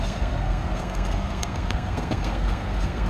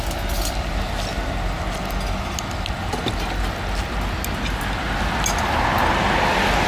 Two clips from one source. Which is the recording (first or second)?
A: second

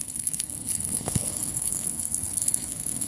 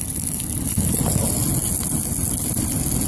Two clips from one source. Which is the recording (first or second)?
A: second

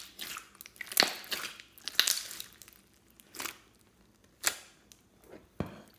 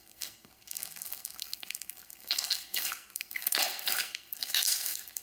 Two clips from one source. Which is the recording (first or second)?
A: first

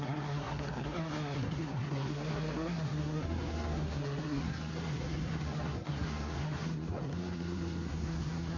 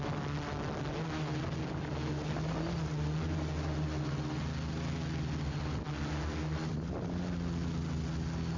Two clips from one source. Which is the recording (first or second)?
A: second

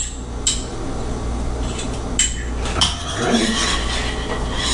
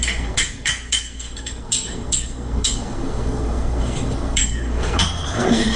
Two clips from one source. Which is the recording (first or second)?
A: first